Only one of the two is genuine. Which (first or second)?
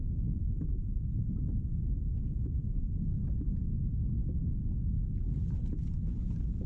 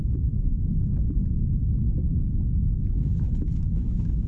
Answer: first